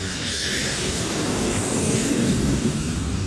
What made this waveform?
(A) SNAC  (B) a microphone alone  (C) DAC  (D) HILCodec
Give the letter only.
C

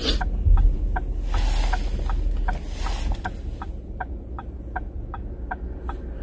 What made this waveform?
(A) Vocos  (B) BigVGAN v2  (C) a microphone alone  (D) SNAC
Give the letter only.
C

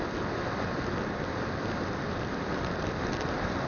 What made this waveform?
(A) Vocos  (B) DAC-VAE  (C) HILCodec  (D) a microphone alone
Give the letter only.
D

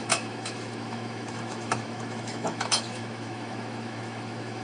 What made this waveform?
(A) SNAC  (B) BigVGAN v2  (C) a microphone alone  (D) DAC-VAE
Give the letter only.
D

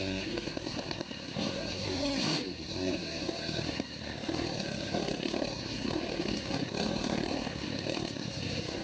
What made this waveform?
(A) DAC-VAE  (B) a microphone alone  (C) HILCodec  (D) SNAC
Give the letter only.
D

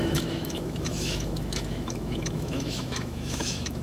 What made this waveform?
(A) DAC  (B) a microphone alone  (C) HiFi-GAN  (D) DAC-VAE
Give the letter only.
D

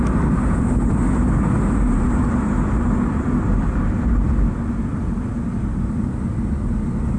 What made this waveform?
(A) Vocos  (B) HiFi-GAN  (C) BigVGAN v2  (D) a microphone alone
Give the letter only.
D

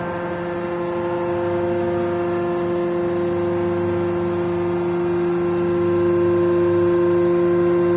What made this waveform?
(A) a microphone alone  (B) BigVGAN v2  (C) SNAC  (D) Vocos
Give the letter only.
A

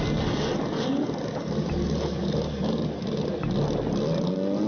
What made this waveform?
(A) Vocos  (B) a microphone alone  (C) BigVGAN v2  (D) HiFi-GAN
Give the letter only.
B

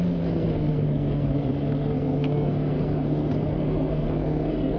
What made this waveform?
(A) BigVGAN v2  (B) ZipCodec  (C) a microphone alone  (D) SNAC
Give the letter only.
D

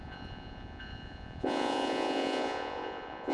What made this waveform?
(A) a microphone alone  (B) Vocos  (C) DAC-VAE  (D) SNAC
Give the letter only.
B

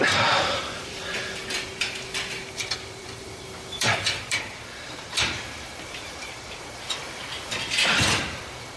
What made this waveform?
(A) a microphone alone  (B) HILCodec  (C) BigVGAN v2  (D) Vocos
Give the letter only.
C